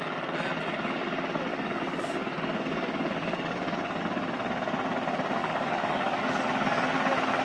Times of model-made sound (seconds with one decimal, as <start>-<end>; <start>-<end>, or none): 1.5-4.0; 5.4-6.4